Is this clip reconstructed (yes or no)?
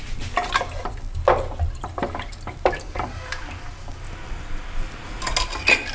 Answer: no